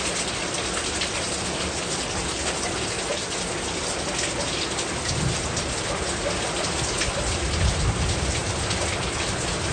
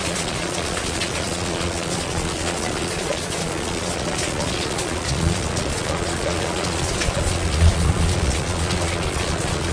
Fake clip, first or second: second